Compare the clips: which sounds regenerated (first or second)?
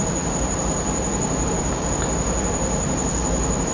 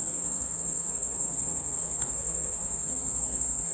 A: second